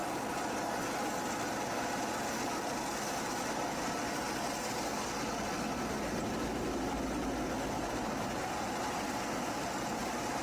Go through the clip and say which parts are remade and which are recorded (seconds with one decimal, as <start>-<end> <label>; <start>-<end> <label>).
0.0-10.4 recorded